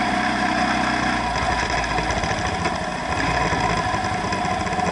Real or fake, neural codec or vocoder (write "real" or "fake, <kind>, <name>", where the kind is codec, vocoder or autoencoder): real